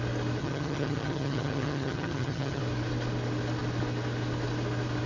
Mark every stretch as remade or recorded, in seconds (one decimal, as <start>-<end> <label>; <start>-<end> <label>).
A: 0.0-0.4 recorded; 0.4-2.6 remade; 2.6-5.1 recorded